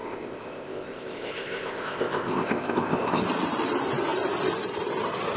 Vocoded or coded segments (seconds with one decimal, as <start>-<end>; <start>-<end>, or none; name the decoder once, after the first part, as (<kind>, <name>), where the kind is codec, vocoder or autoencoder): 0.0-3.2 (codec, ZipCodec)